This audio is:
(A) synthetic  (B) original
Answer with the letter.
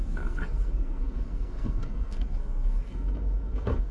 A